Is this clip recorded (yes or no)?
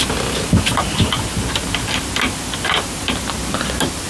yes